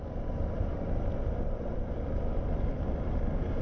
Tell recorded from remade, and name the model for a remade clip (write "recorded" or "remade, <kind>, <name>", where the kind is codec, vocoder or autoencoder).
recorded